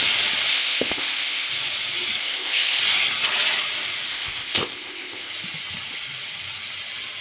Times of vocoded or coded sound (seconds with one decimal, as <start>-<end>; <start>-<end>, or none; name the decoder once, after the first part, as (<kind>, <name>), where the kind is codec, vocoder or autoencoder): 0.5-1.5 (codec, ZipCodec); 2.2-2.8; 4.1-5.3